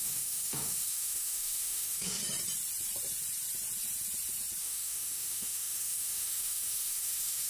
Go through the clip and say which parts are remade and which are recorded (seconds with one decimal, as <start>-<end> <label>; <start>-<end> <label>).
0.0-2.2 remade; 2.2-4.6 recorded; 4.6-7.5 remade